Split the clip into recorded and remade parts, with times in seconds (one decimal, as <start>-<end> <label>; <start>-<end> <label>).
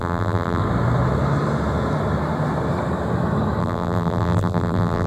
0.0-0.6 remade; 0.6-3.6 recorded; 3.6-5.1 remade